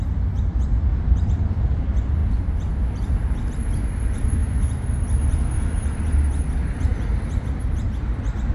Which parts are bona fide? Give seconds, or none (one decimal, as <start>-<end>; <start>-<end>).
0.0-0.9; 1.8-2.2; 3.6-8.5